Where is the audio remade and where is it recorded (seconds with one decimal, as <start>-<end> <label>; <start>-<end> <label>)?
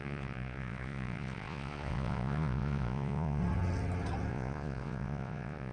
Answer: 0.0-3.4 remade; 3.4-4.3 recorded; 4.3-5.7 remade